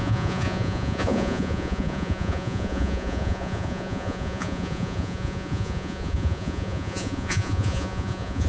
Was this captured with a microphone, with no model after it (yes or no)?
no